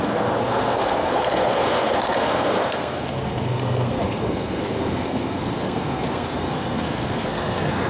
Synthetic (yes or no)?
yes